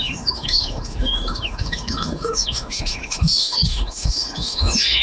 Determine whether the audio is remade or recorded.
remade